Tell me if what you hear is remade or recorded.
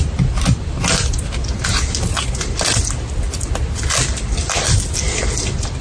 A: recorded